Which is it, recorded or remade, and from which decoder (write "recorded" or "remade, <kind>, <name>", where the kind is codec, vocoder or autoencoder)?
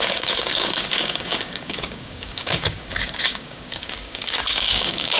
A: remade, codec, DAC